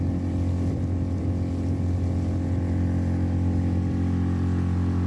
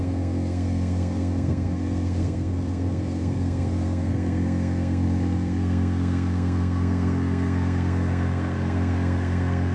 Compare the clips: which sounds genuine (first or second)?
first